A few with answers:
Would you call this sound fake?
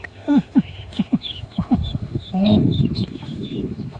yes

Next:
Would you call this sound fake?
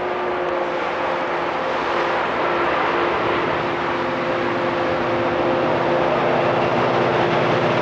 no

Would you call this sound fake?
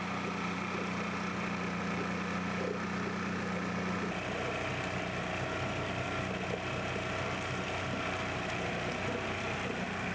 no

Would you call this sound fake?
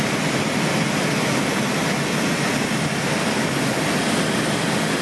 no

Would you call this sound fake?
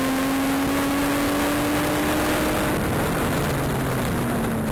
no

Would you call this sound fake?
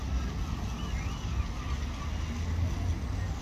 no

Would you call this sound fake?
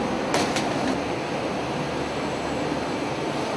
no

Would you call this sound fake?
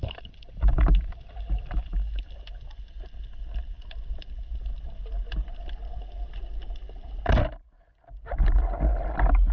no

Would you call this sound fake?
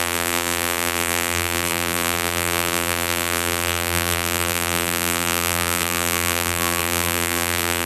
yes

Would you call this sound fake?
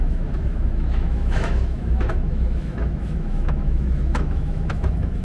yes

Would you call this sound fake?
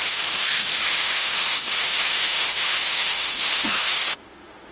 yes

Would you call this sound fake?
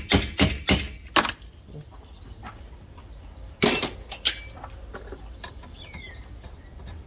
no